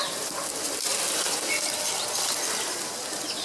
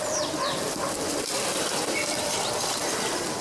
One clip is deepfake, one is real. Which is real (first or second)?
first